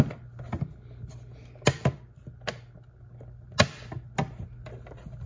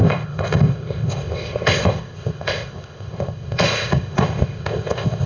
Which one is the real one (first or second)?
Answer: first